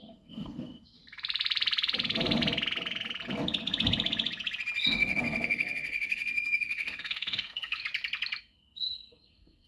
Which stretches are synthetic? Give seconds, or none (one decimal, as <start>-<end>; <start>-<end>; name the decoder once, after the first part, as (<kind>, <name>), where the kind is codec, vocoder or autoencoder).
0.0-1.0 (codec, SNAC); 4.8-7.8; 8.4-9.7